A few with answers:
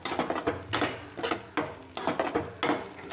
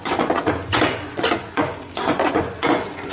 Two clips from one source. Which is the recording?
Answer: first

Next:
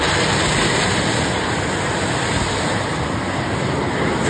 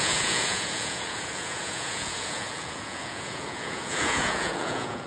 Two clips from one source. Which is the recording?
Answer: first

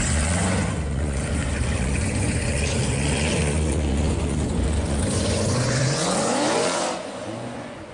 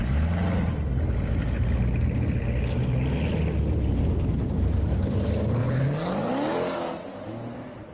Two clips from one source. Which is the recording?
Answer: second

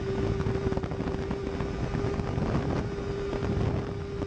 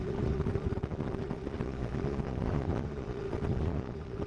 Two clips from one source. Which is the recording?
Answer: first